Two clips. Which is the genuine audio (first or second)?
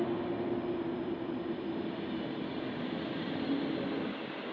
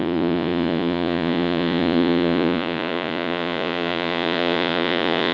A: first